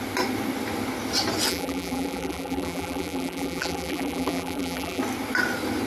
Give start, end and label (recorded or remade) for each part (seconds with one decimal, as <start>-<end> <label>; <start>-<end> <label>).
0.0-1.5 recorded; 1.5-5.0 remade; 5.0-5.9 recorded